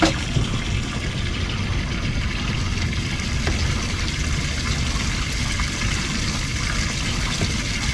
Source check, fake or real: real